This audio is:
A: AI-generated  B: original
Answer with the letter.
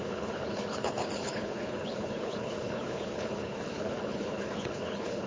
A